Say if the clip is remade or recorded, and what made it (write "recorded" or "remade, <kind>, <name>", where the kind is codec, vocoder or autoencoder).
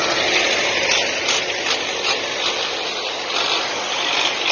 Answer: recorded